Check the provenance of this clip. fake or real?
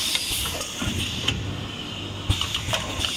real